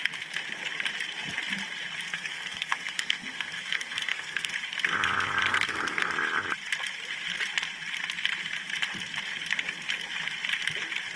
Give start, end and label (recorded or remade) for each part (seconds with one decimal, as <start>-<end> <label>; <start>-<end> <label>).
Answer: 0.0-2.1 recorded; 2.1-4.5 remade; 4.5-5.5 recorded; 5.5-6.1 remade; 6.1-11.2 recorded